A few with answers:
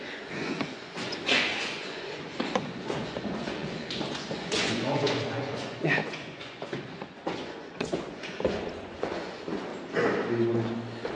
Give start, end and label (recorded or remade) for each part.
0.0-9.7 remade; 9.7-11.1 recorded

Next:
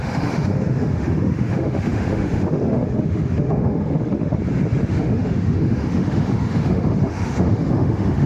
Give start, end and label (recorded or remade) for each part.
0.0-4.4 remade; 4.4-4.9 recorded; 4.9-8.3 remade

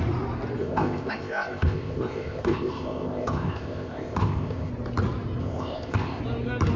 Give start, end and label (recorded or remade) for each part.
0.0-0.6 recorded; 0.6-4.7 remade; 4.7-5.4 recorded; 5.4-6.2 remade; 6.2-6.8 recorded

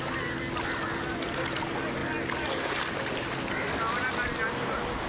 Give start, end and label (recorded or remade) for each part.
0.0-5.1 recorded

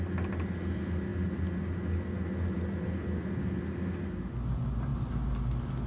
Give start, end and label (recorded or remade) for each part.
0.0-5.9 recorded

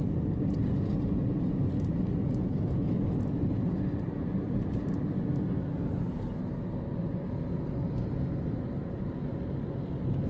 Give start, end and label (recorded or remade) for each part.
0.0-10.3 recorded

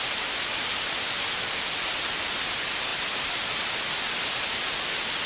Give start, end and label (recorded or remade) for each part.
0.0-5.3 recorded